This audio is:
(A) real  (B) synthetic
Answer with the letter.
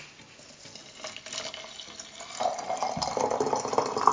A